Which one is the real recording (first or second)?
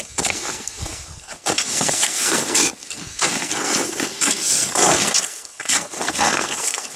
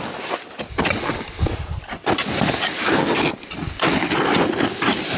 second